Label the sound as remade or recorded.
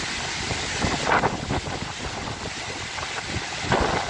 recorded